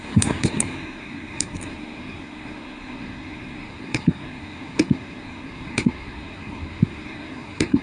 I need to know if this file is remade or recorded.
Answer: remade